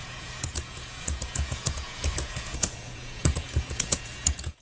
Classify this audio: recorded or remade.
remade